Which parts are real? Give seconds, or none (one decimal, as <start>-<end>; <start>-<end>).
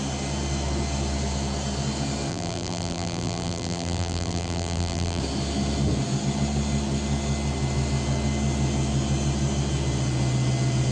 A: 0.0-2.3; 5.2-10.9